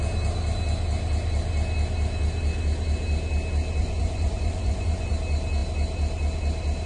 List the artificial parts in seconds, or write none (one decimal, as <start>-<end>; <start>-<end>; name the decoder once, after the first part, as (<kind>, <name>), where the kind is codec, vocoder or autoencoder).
3.8-5.1 (vocoder, Vocos)